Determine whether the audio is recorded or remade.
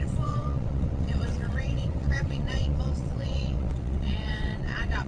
remade